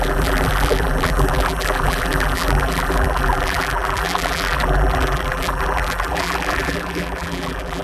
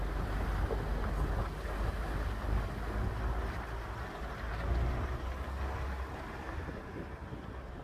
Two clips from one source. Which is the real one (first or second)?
second